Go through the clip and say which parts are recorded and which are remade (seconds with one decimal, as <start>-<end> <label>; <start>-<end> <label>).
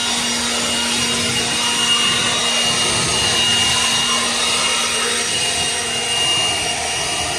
0.0-7.4 recorded